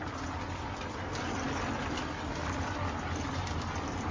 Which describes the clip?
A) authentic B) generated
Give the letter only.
A